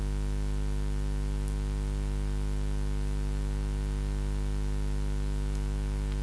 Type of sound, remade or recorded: recorded